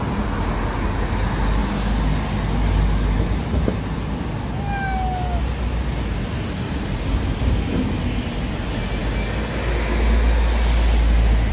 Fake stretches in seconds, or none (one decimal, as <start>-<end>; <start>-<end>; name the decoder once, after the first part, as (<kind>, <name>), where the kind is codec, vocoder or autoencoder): none